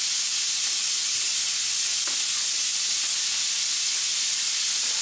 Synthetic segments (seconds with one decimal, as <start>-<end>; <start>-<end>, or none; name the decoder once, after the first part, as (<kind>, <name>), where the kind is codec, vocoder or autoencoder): none